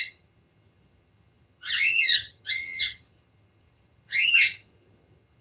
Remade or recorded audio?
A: remade